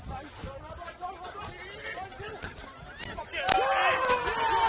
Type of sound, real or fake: real